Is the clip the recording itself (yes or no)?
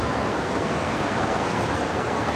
no